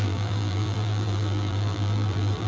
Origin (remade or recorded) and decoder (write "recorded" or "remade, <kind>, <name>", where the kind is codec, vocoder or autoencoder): remade, vocoder, BigVGAN v2